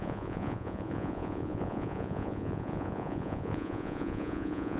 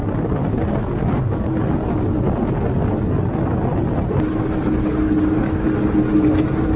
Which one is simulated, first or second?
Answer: first